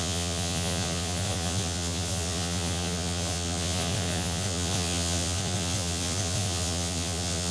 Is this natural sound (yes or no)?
no